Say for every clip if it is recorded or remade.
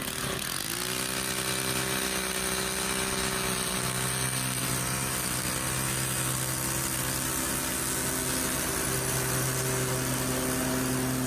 recorded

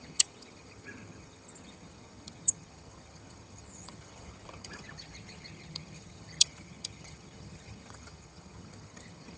remade